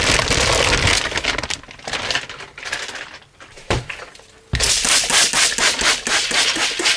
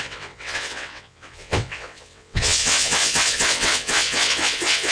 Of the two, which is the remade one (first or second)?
second